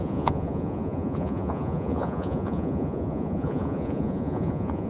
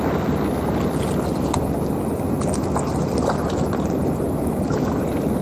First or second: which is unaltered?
second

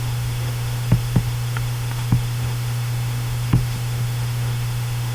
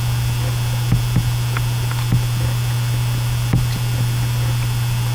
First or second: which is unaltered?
second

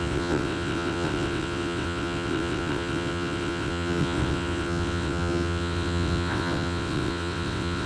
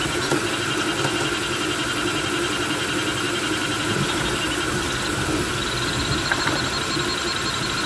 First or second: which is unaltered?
second